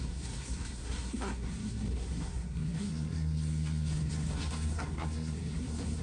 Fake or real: fake